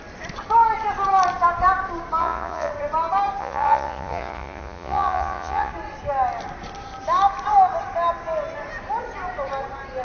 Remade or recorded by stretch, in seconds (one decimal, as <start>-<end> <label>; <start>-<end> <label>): 0.0-2.2 recorded; 2.2-2.7 remade; 2.7-3.4 recorded; 3.4-5.7 remade; 5.7-10.0 recorded